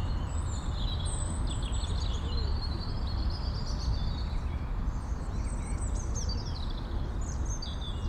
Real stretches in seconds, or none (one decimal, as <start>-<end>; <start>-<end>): 0.0-8.1